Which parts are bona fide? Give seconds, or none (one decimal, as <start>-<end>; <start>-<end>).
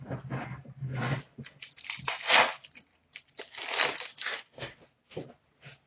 0.0-4.1; 4.8-5.9